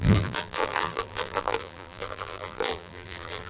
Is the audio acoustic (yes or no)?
no